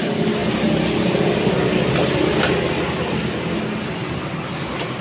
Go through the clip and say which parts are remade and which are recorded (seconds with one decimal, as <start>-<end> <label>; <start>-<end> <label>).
0.0-5.0 recorded